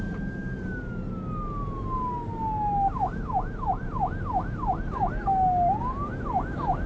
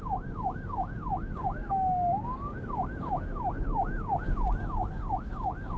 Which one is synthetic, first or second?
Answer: second